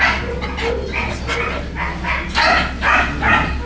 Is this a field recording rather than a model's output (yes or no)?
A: yes